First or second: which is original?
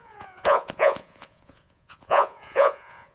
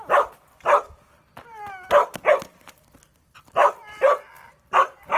second